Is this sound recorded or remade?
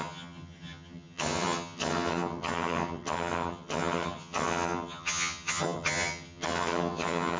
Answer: remade